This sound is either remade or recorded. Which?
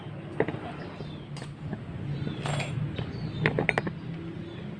recorded